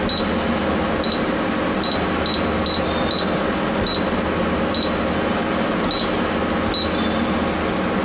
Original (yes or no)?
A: yes